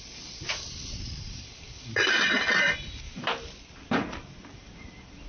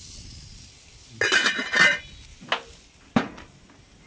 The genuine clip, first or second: second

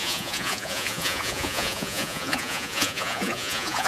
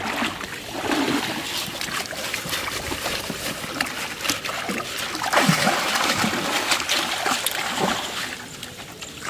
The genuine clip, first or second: second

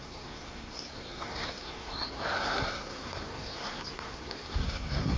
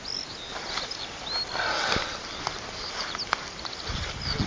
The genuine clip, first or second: second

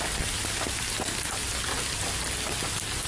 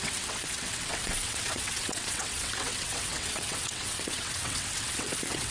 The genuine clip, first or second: first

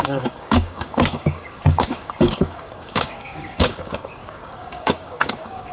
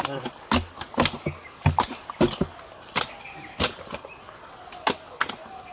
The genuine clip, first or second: second